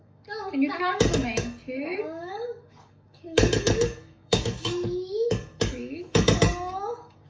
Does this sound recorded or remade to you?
remade